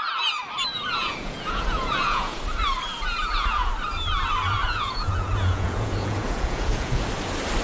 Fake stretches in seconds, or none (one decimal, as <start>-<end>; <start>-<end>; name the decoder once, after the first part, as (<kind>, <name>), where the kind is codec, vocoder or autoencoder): 1.0-2.4 (vocoder, Vocos); 2.9-3.7; 4.6-7.0